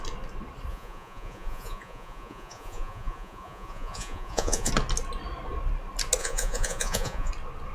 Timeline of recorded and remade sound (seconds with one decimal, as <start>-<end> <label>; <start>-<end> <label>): 0.0-0.7 recorded; 0.7-4.7 remade; 4.7-6.2 recorded; 6.2-7.3 remade; 7.3-7.7 recorded